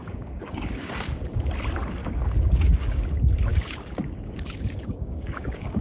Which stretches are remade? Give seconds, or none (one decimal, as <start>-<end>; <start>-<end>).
0.0-1.5; 2.0-3.1; 3.5-5.8